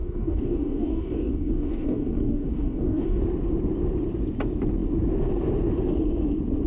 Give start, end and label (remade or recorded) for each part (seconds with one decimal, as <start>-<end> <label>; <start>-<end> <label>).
0.0-3.2 remade; 3.2-6.7 recorded